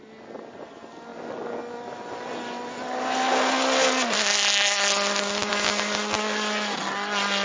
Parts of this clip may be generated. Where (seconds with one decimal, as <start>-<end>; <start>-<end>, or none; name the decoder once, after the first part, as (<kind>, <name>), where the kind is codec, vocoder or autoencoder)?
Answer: none